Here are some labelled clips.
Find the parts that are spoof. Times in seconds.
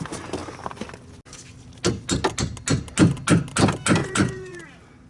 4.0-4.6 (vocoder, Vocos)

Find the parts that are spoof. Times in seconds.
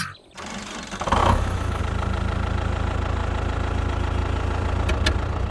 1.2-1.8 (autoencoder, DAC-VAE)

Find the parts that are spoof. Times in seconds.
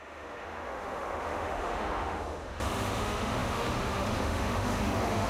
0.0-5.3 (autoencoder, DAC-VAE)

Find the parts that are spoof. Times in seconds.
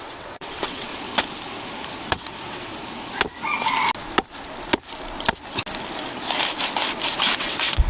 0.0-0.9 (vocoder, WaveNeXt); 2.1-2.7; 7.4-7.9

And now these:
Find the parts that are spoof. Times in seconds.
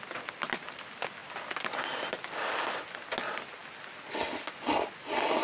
none